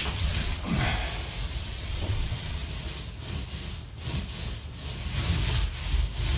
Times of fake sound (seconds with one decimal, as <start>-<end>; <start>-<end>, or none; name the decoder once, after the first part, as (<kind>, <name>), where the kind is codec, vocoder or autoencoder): 0.0-0.9 (vocoder, WaveNeXt); 1.6-2.6